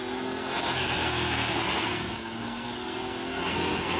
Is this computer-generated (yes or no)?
yes